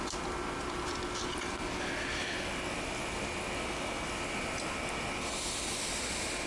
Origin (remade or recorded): recorded